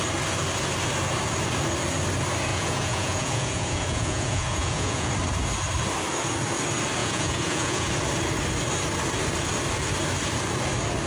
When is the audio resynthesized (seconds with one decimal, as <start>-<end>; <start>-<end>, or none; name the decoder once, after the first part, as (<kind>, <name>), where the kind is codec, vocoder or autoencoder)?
2.5-5.1 (vocoder, Vocos); 7.0-7.9